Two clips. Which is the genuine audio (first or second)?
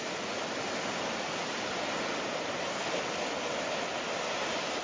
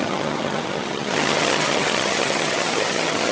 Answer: first